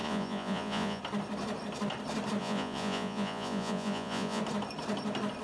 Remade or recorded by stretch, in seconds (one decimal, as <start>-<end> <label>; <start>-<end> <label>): 0.0-1.0 remade; 1.0-2.4 recorded; 2.4-4.4 remade; 4.4-5.4 recorded

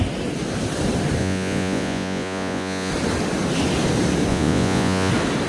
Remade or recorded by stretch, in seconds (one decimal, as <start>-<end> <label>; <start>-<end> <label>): 0.0-1.2 recorded; 1.2-2.9 remade; 2.9-4.3 recorded; 4.3-5.1 remade; 5.1-5.5 recorded

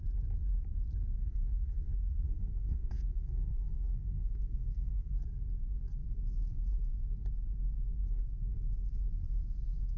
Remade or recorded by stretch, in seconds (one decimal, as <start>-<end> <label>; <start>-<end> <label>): 0.0-1.2 recorded; 1.2-5.1 remade; 5.1-10.0 recorded

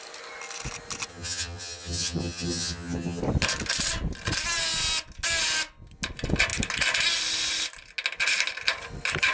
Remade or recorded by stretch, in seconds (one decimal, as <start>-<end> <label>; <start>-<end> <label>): 0.0-1.1 recorded; 1.1-3.2 remade; 3.2-9.3 recorded

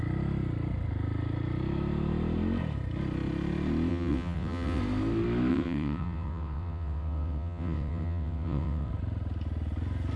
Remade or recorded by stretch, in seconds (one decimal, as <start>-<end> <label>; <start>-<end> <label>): 0.0-3.9 recorded; 3.9-4.8 remade; 4.8-5.5 recorded; 5.5-8.9 remade; 8.9-10.2 recorded

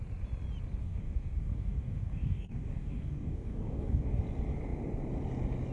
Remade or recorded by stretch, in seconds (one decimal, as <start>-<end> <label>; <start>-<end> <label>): 0.0-0.8 recorded; 0.8-4.2 remade; 4.2-5.7 recorded

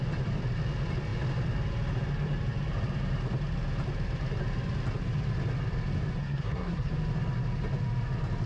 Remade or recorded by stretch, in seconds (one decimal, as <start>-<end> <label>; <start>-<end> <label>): 0.0-6.2 recorded; 6.2-6.9 remade; 6.9-8.5 recorded